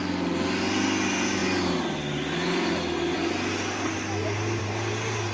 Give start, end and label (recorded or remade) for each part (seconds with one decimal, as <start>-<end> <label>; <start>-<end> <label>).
0.0-5.3 recorded